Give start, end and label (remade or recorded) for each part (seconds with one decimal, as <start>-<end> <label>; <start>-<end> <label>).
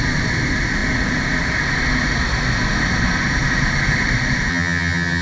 0.0-4.5 recorded; 4.5-5.2 remade